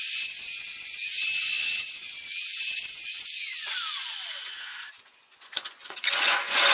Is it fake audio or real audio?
fake